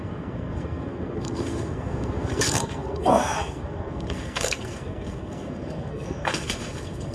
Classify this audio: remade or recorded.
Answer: remade